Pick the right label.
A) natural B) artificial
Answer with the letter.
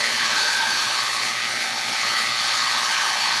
B